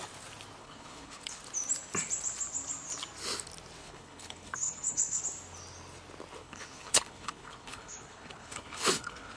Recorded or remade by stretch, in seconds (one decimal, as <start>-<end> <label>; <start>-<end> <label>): 0.0-0.6 recorded; 0.6-1.4 remade; 1.4-3.8 recorded; 3.8-5.2 remade; 5.2-6.4 recorded; 6.4-9.4 remade